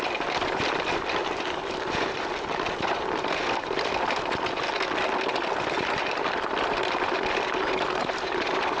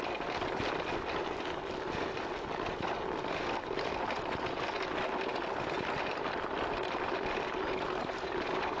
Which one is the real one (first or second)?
second